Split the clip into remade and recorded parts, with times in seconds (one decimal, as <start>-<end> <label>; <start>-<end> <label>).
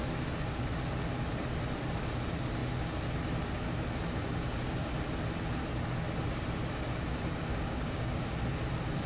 0.0-7.5 recorded; 7.5-8.2 remade; 8.2-9.1 recorded